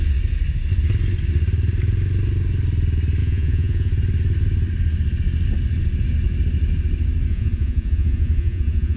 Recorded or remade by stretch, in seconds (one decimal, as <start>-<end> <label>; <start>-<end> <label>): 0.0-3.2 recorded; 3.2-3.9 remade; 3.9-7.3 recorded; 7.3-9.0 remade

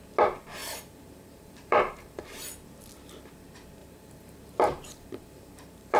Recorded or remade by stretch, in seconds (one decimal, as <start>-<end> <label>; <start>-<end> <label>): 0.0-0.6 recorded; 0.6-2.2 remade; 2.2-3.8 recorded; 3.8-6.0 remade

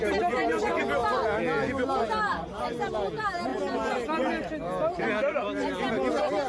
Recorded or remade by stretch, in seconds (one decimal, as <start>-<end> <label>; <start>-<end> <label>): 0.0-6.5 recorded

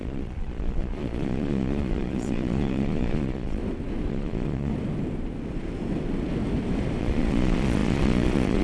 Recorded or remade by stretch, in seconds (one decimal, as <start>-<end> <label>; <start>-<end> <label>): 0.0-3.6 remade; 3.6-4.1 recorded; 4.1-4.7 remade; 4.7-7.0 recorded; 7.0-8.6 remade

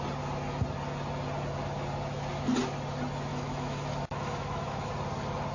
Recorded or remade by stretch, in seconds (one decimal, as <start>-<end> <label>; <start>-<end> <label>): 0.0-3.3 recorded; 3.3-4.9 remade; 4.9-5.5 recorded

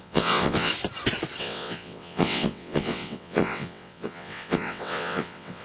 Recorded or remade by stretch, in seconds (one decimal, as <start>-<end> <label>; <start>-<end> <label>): 0.0-0.7 remade; 0.7-1.4 recorded; 1.4-5.6 remade

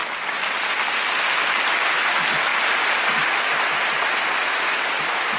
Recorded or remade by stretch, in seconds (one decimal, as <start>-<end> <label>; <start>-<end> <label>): 0.0-5.4 recorded